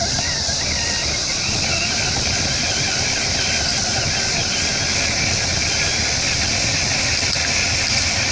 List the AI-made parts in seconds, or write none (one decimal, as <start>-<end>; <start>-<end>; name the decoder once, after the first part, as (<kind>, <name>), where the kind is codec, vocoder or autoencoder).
none